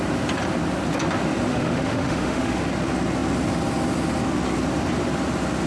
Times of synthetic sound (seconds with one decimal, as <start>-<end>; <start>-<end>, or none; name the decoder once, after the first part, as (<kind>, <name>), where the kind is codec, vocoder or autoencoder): 1.5-2.6 (autoencoder, DAC-VAE)